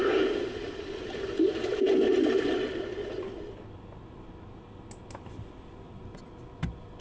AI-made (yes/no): no